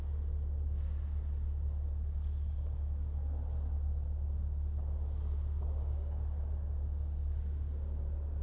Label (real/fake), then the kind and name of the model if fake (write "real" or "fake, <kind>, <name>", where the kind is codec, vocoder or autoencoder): real